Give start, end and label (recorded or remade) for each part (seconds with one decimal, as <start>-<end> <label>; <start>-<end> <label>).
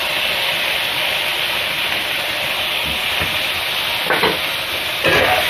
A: 0.0-5.5 recorded